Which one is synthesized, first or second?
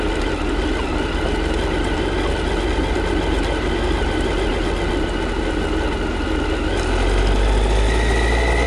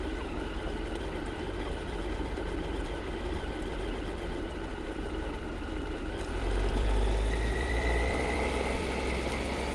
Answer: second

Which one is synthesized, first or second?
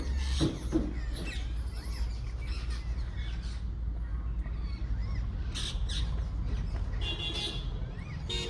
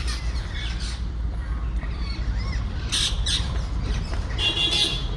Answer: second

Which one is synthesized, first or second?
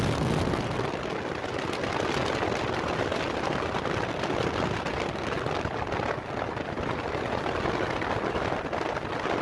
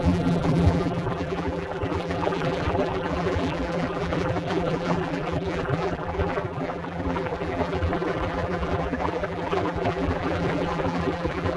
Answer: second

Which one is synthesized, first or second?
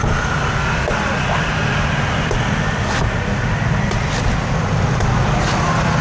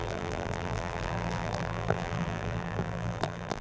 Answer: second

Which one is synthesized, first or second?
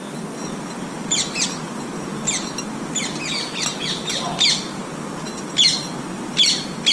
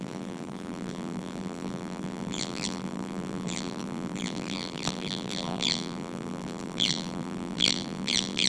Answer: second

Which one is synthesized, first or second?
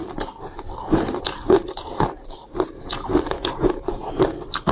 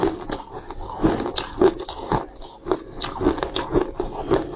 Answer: first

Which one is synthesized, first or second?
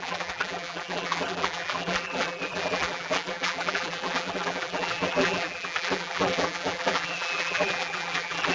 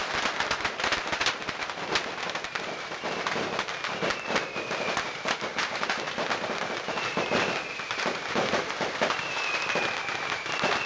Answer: first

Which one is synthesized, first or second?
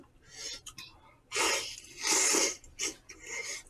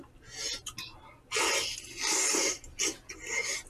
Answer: first